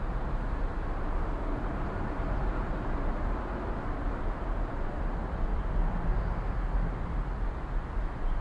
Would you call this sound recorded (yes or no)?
yes